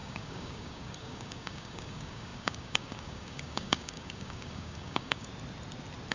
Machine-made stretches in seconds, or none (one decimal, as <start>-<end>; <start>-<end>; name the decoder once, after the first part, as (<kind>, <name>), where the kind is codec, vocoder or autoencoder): 0.0-5.3 (codec, DAC)